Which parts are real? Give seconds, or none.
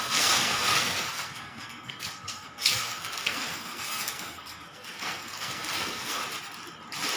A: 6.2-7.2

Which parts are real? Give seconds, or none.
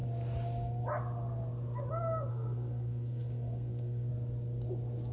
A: 0.0-2.3; 4.1-5.1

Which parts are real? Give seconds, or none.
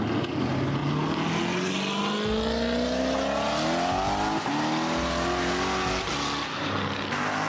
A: 0.0-7.5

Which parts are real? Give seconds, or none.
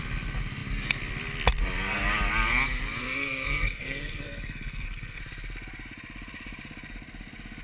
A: 0.0-3.0; 5.2-7.6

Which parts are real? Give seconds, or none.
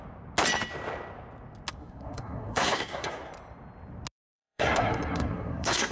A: 0.0-1.8; 3.3-4.2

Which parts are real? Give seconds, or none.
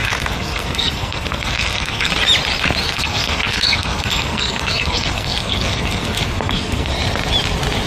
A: 2.1-2.8; 6.9-7.9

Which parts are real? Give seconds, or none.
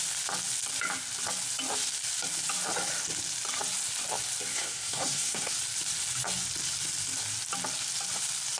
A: 0.0-4.5; 5.5-8.6